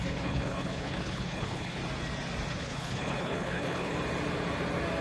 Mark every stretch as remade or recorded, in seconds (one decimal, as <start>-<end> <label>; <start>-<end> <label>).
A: 0.0-1.8 remade; 1.8-2.5 recorded; 2.5-3.9 remade; 3.9-5.0 recorded